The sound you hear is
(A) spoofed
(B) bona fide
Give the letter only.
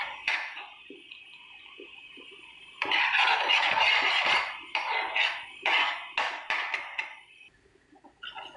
B